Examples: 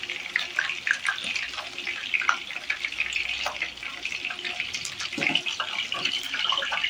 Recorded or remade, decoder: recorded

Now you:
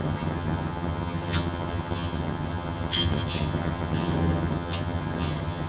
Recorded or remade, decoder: remade, vocoder, HiFi-GAN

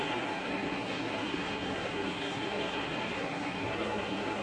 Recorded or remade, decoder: remade, codec, SNAC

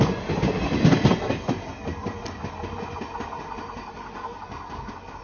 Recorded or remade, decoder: recorded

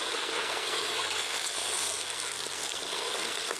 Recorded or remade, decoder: remade, codec, SNAC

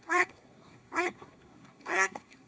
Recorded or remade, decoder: remade, codec, SNAC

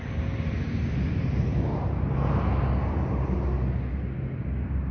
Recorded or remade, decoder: recorded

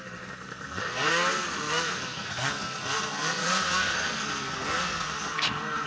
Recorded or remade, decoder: remade, codec, SNAC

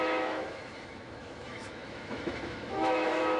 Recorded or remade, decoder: remade, autoencoder, DAC-VAE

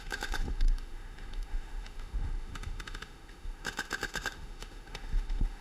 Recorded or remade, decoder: remade, autoencoder, DAC-VAE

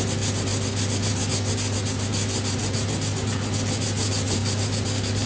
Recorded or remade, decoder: recorded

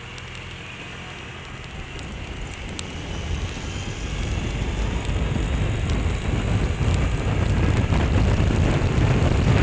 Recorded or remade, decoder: recorded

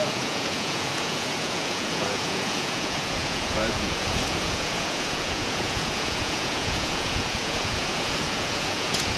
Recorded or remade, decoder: remade, vocoder, Vocos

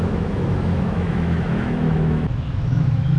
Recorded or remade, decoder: remade, autoencoder, DAC-VAE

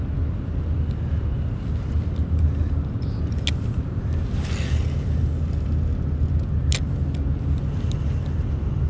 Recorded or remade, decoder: recorded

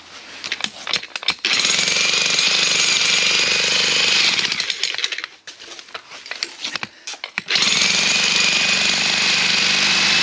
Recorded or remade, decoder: recorded